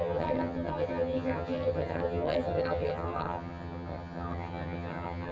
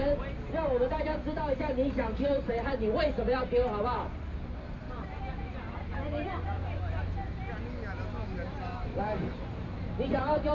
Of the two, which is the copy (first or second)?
first